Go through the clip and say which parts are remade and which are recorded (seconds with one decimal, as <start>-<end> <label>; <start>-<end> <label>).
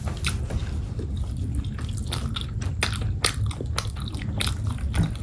0.0-5.2 recorded